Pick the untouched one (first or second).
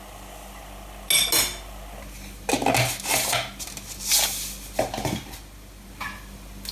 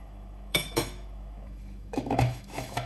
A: first